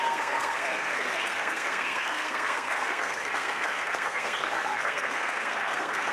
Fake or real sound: fake